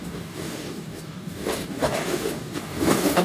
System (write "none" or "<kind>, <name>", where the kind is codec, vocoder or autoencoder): codec, DAC